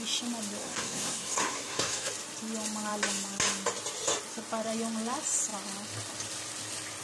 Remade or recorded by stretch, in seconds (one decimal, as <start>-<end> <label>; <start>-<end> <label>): 0.0-0.6 recorded; 0.6-2.1 remade; 2.1-7.0 recorded